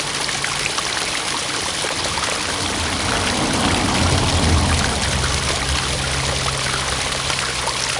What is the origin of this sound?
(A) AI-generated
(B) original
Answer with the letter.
B